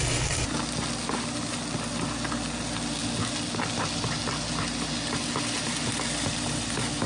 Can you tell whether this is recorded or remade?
recorded